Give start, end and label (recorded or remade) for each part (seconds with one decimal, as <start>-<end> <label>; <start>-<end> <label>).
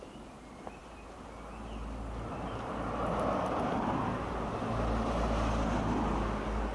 0.0-6.7 recorded